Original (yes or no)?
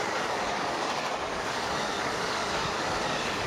no